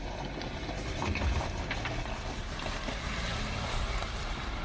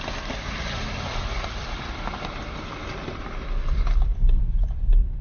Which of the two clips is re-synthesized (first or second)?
second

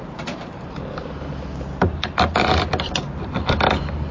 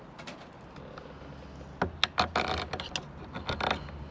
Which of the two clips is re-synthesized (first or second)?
first